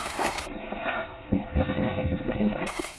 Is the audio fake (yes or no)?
yes